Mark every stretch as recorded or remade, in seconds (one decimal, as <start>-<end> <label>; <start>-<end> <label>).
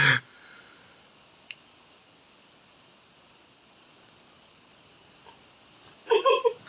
0.0-6.7 recorded